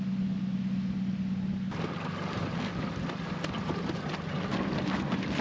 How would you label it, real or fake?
real